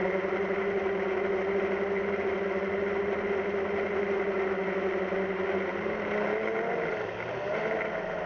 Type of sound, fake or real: real